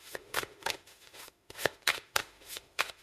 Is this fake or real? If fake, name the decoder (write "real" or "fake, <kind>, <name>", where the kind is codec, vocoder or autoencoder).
fake, autoencoder, DAC-VAE